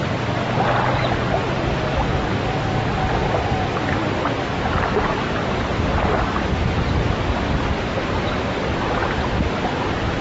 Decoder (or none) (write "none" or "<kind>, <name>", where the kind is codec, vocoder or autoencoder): none